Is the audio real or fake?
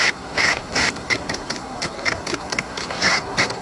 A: fake